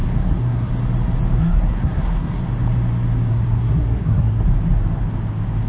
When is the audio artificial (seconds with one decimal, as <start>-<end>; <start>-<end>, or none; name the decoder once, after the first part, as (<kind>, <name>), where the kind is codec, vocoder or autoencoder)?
0.0-0.7 (codec, SNAC); 1.4-2.4; 3.3-4.4